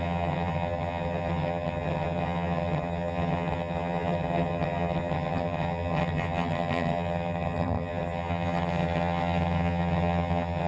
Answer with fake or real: fake